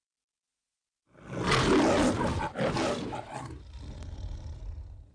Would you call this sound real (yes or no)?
yes